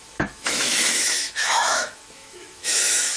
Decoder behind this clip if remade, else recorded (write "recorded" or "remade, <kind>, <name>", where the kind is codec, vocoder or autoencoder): remade, autoencoder, DAC-VAE